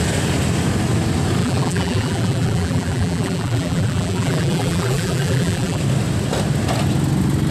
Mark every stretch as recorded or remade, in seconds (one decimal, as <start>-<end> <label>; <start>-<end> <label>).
0.0-1.4 recorded; 1.4-5.8 remade; 5.8-7.5 recorded